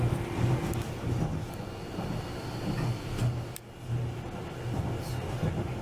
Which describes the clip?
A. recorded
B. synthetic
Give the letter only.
A